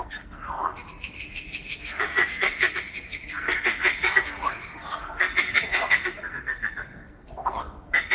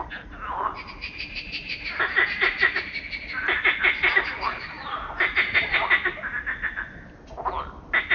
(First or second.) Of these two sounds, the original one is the second